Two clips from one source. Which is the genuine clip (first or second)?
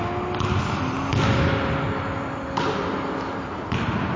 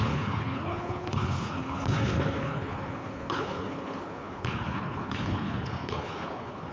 first